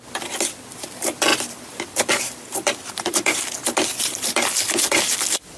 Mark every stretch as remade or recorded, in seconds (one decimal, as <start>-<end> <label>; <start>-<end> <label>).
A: 0.0-5.6 recorded